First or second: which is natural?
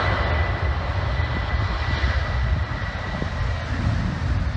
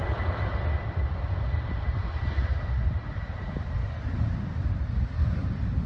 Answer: first